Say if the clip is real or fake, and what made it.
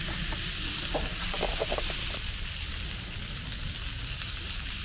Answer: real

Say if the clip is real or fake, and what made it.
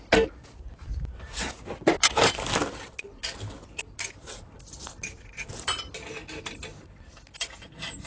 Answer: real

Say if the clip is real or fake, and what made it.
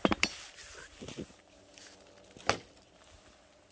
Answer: real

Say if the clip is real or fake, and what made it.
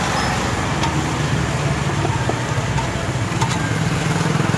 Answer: real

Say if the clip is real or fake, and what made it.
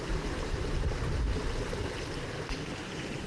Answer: real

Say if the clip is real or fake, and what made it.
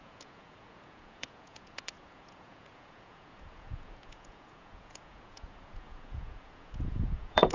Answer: fake, vocoder, Vocos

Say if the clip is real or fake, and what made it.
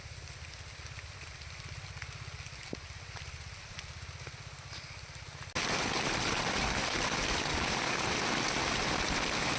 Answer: real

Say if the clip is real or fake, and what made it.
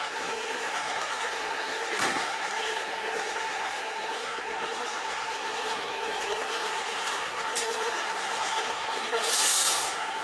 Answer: fake, codec, SNAC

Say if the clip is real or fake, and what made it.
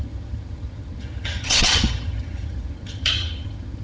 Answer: fake, vocoder, HiFi-GAN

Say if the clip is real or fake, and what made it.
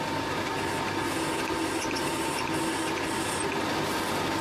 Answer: real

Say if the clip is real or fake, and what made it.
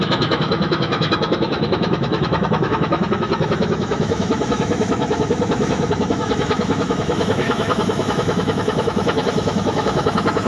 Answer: fake, autoencoder, DAC-VAE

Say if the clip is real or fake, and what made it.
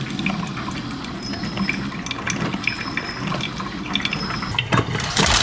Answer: real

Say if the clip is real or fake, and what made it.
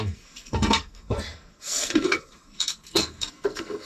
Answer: fake, codec, SNAC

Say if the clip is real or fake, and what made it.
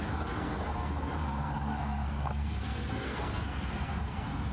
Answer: fake, codec, SNAC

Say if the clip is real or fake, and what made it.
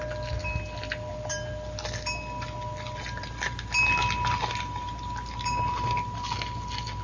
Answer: real